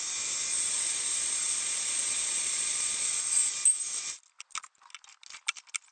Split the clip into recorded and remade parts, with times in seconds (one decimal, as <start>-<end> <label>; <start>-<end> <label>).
0.0-0.5 recorded; 0.5-3.4 remade; 3.4-5.9 recorded